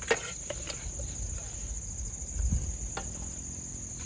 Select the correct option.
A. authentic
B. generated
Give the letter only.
A